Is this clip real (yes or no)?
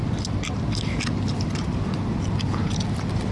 yes